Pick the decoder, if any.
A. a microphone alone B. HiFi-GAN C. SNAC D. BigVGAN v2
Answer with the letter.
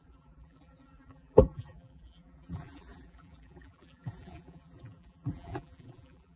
D